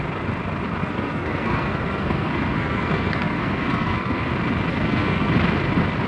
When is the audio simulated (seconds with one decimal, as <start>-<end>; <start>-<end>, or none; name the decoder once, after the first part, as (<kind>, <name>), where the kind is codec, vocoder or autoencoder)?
0.8-4.3 (codec, SNAC); 4.7-5.3